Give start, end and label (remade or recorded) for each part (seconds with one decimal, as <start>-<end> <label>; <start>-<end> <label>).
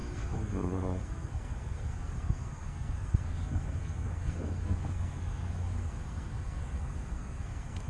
0.0-7.9 remade